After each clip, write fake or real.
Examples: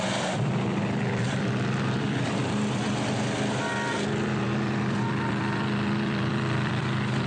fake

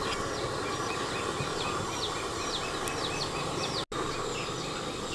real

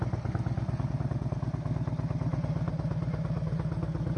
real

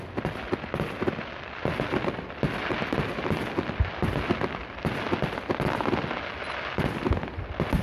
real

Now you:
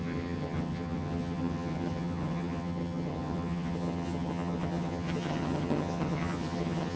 fake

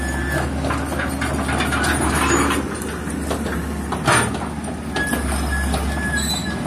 real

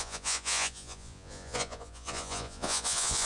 fake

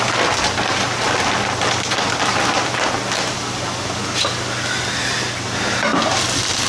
real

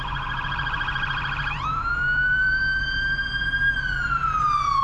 fake